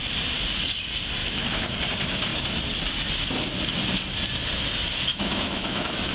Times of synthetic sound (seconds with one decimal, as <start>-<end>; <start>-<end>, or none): 1.2-1.7; 5.1-6.1